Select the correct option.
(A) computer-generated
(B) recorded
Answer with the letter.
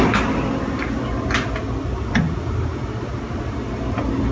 B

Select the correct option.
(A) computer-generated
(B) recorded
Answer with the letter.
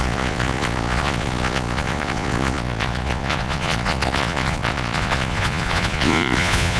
A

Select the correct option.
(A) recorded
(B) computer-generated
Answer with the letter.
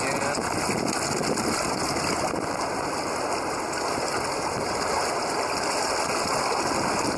A